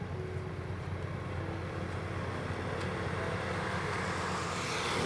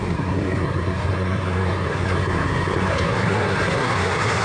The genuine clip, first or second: first